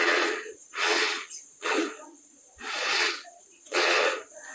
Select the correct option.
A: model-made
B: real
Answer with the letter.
A